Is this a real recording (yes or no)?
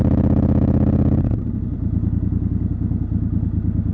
yes